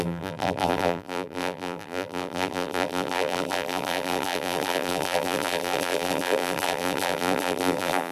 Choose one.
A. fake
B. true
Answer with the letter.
A